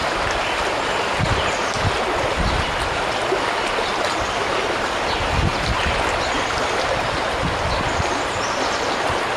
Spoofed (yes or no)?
no